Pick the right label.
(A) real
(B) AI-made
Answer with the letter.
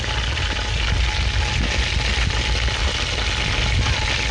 A